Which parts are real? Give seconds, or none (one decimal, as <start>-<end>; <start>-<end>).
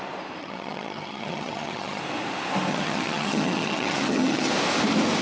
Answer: 0.0-0.4; 2.0-2.7; 4.5-5.2